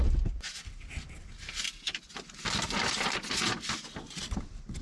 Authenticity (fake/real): real